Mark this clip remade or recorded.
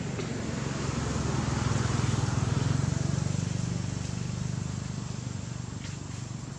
recorded